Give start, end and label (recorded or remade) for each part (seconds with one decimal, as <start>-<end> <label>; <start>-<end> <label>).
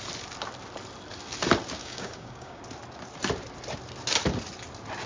0.0-1.8 recorded; 1.8-2.6 remade; 2.6-5.1 recorded